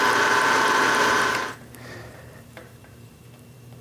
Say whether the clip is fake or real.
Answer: fake